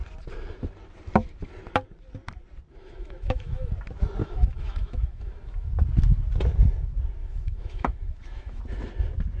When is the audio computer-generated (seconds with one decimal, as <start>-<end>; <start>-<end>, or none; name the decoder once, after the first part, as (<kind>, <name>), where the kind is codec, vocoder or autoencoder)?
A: 2.8-3.7 (autoencoder, DAC-VAE); 4.2-5.7; 7.2-8.6